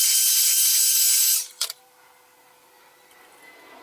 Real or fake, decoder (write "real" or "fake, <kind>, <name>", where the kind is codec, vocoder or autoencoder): fake, vocoder, BigVGAN v2